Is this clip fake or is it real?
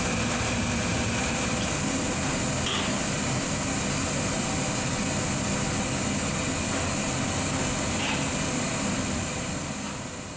real